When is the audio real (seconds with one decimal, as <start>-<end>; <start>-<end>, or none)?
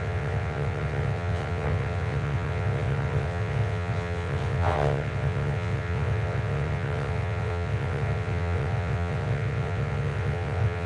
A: none